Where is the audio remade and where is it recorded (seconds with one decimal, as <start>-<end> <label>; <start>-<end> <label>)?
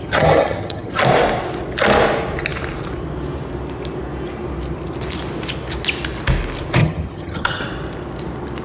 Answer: 0.0-1.0 remade; 1.0-6.8 recorded; 6.8-7.6 remade; 7.6-8.6 recorded